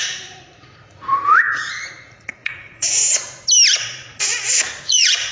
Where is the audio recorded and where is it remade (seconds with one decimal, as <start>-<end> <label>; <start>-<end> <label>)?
0.0-3.0 remade; 3.0-3.8 recorded; 3.8-5.3 remade